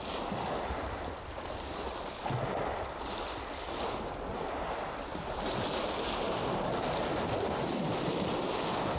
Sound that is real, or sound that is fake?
real